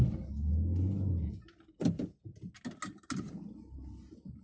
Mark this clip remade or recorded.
recorded